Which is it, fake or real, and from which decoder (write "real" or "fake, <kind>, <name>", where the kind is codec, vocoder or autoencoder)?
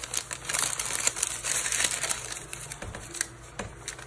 real